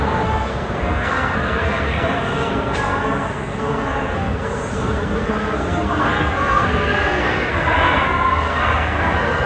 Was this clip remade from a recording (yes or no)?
yes